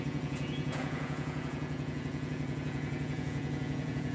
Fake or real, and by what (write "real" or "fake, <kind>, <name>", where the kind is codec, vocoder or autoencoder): fake, vocoder, Vocos